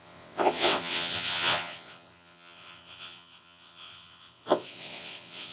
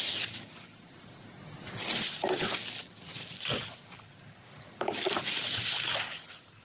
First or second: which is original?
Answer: second